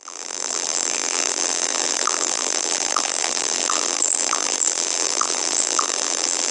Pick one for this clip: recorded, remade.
remade